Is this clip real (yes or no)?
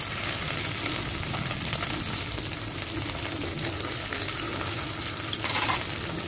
yes